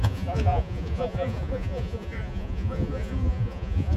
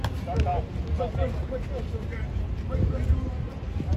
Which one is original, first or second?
second